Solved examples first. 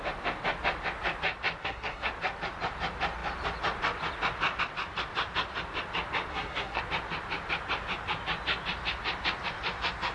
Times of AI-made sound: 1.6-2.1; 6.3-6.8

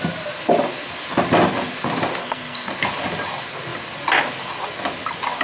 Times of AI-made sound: 2.2-2.7

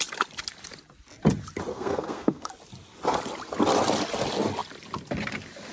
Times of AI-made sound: 1.7-2.5

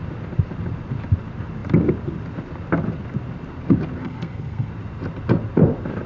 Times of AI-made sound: 4.0-4.7